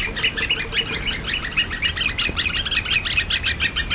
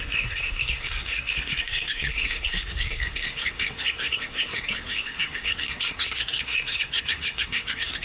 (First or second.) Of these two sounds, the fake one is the second